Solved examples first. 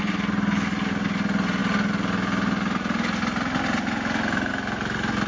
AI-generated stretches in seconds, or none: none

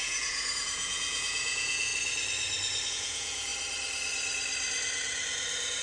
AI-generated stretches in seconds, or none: 0.0-1.9 (vocoder, Vocos); 2.9-3.5